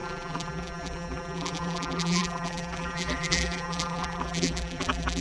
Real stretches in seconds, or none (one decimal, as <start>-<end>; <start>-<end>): none